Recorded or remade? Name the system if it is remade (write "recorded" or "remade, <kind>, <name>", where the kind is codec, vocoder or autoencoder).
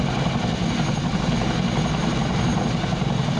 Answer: recorded